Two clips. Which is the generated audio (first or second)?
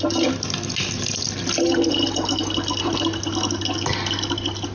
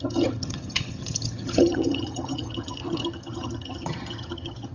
second